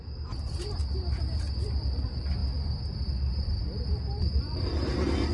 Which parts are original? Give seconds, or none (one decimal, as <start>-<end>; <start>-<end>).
0.8-1.6; 2.4-4.3